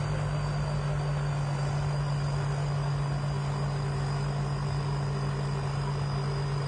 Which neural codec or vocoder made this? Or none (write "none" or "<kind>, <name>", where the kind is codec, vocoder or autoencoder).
none